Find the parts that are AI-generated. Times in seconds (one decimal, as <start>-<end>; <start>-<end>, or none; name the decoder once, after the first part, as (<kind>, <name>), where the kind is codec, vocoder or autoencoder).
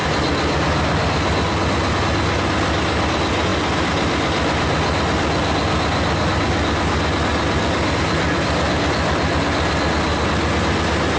none